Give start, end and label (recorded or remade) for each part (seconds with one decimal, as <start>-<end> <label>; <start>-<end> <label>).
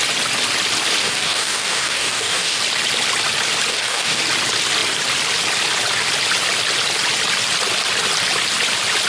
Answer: 0.0-1.0 recorded; 1.0-2.6 remade; 2.6-3.7 recorded; 3.7-4.2 remade; 4.2-9.1 recorded